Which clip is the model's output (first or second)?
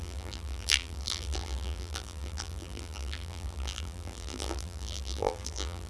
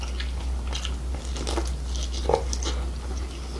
first